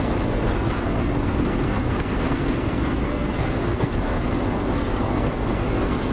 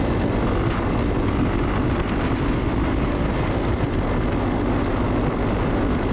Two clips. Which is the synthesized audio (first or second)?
first